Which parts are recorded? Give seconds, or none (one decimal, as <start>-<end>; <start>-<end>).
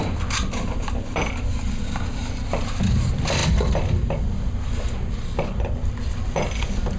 0.0-7.0